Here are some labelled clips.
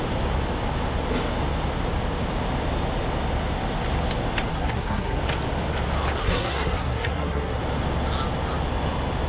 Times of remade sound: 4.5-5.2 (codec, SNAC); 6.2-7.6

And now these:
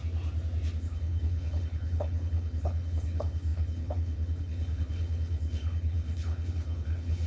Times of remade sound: 0.8-7.3 (codec, HILCodec)

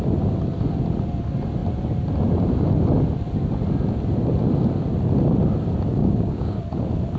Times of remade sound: 6.0-6.6 (codec, DAC)

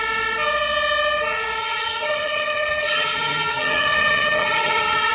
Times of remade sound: 1.6-5.1 (vocoder, HiFi-GAN)

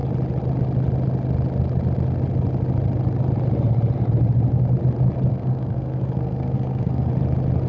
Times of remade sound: 5.3-7.1 (codec, SNAC)

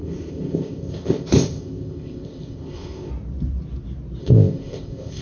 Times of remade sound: 0.0-3.1 (codec, ZipCodec); 4.2-5.2

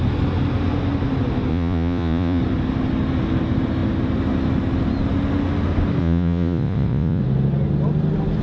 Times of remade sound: 1.5-2.4 (vocoder, Vocos); 6.0-7.2

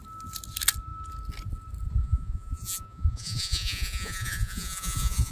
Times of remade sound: 2.0-5.3 (vocoder, Vocos)